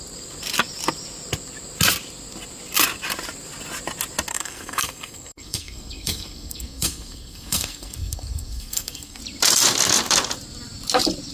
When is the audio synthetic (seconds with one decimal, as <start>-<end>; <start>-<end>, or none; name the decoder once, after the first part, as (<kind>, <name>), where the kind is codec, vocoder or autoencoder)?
4.3-9.2 (codec, SNAC)